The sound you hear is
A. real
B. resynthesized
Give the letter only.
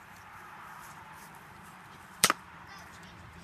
B